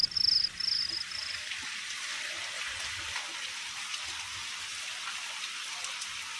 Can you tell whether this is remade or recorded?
recorded